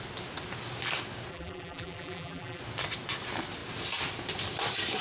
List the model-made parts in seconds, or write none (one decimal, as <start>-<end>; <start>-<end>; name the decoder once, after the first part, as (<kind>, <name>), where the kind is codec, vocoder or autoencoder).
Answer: 1.3-2.6 (vocoder, BigVGAN v2)